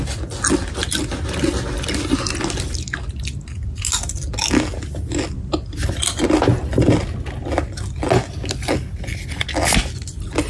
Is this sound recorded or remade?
recorded